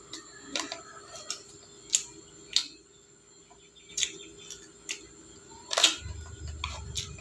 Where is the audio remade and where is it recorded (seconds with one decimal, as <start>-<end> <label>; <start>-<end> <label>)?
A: 0.0-7.2 recorded